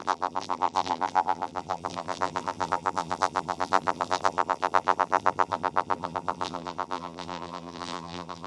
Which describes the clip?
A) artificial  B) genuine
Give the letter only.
A